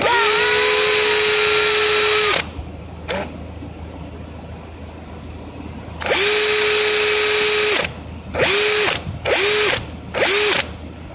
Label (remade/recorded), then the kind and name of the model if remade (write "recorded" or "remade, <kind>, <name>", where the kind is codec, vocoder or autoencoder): recorded